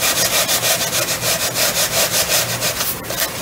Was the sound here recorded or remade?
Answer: recorded